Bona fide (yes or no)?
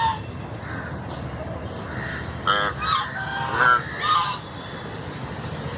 yes